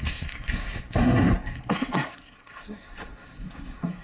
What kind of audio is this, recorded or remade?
remade